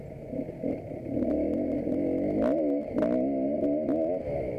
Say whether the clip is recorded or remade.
recorded